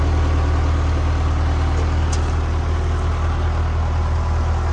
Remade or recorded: recorded